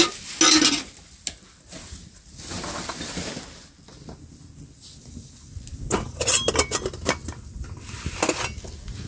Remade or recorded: recorded